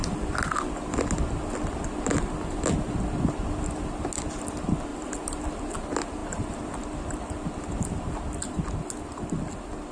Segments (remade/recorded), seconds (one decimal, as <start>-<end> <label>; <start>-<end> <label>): 0.0-9.9 recorded